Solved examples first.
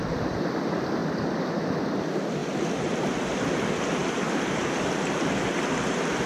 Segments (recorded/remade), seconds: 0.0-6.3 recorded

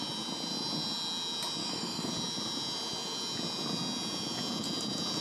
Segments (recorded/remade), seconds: 0.0-1.6 recorded; 1.6-2.1 remade; 2.1-5.2 recorded

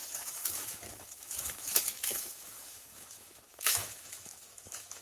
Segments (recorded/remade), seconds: 0.0-5.0 remade

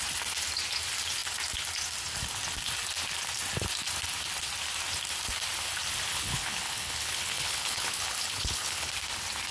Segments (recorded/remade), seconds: 0.0-6.1 recorded; 6.1-8.9 remade; 8.9-9.5 recorded

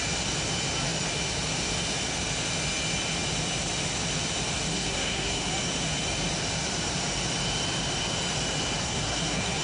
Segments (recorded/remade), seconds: 0.0-4.7 recorded; 4.7-5.5 remade; 5.5-8.8 recorded; 8.8-9.6 remade

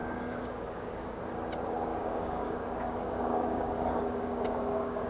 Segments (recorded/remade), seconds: 0.0-1.2 remade; 1.2-1.9 recorded; 1.9-5.1 remade

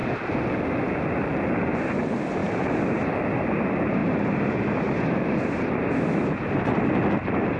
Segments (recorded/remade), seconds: 0.0-2.4 recorded; 2.4-3.2 remade; 3.2-4.0 recorded; 4.0-6.8 remade; 6.8-7.6 recorded